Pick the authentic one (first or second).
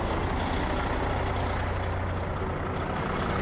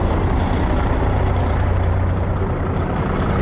first